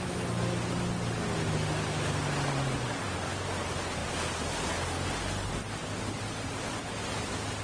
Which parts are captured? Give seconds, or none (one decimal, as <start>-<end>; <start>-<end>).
0.0-7.6